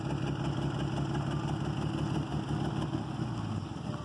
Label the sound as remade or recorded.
recorded